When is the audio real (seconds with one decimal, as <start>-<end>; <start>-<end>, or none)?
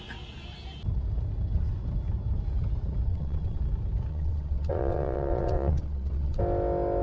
0.0-3.1; 3.6-4.1; 6.4-7.0